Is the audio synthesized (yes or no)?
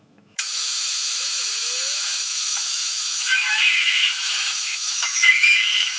yes